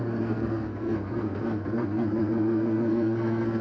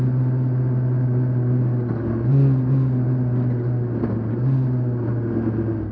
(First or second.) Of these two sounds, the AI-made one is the first